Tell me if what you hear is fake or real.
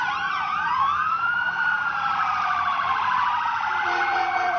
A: fake